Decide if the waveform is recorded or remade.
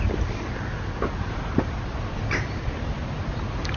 recorded